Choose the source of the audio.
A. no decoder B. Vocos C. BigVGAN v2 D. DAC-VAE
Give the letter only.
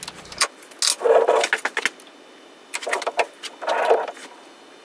A